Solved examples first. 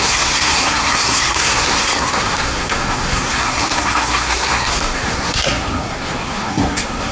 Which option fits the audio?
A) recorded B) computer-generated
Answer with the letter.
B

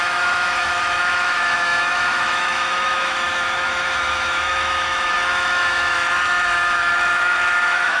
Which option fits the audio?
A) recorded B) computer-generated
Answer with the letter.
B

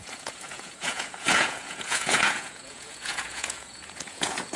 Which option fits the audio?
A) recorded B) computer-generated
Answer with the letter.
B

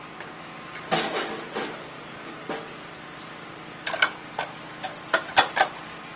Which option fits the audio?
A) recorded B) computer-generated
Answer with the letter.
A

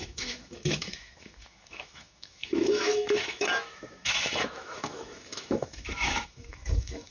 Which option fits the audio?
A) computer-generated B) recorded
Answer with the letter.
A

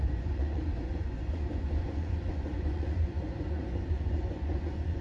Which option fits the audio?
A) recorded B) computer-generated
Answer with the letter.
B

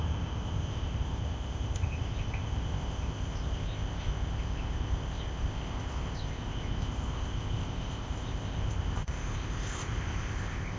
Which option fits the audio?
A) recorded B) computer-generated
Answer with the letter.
B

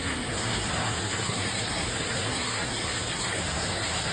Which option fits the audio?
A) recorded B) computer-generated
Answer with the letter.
B